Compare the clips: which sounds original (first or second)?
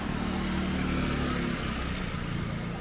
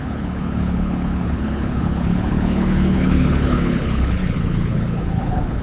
first